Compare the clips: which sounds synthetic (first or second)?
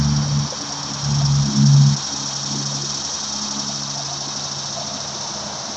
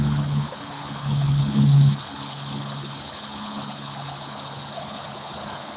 second